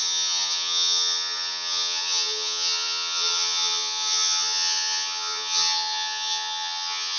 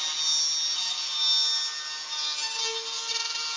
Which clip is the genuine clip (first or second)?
second